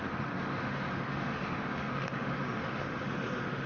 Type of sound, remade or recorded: remade